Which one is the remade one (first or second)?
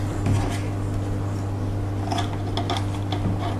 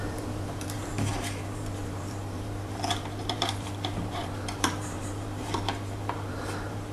second